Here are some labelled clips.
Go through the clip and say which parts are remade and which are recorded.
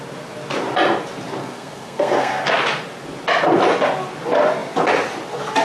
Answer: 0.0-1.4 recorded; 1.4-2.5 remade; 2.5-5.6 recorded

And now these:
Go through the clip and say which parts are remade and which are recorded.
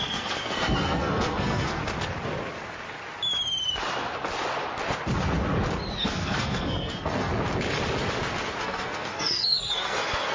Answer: 0.0-1.8 remade; 1.8-6.0 recorded; 6.0-7.3 remade; 7.3-8.6 recorded; 8.6-10.3 remade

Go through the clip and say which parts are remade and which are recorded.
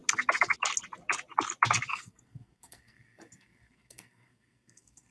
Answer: 0.0-1.9 recorded; 1.9-5.1 remade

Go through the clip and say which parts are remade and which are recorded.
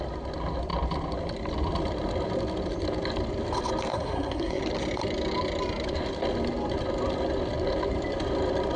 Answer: 0.0-3.9 recorded; 3.9-4.6 remade; 4.6-8.8 recorded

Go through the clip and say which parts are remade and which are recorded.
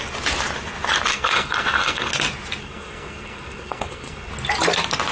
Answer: 0.0-1.1 recorded; 1.1-2.1 remade; 2.1-2.6 recorded; 2.6-4.3 remade; 4.3-5.1 recorded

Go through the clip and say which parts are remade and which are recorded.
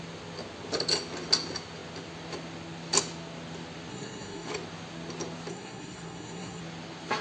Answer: 0.0-3.9 recorded; 3.9-4.5 remade; 4.5-5.5 recorded; 5.5-6.6 remade; 6.6-7.2 recorded